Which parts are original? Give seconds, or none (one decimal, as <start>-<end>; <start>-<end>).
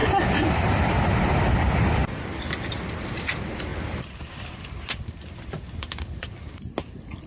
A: 0.0-7.3